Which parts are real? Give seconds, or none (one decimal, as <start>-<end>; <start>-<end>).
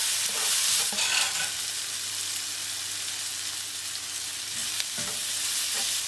2.5-6.1